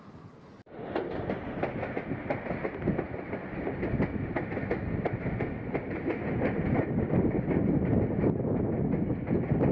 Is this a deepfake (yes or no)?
no